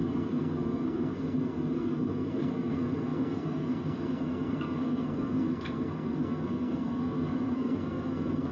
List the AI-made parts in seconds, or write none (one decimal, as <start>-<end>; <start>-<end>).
0.0-8.5